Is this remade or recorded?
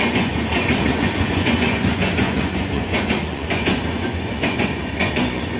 remade